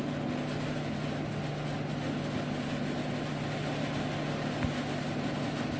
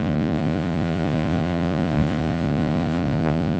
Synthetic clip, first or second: second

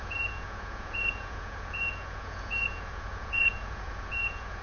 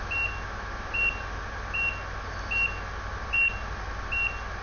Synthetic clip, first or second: first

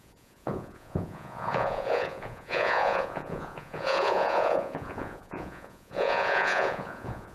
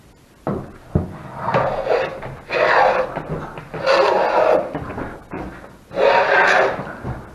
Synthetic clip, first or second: first